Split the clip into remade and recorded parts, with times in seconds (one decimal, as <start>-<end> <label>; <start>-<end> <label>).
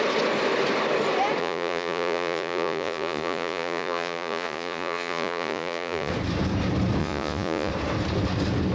0.0-1.4 recorded; 1.4-6.1 remade; 6.1-7.0 recorded; 7.0-7.7 remade; 7.7-8.7 recorded